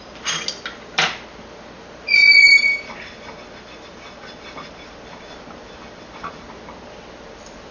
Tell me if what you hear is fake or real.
real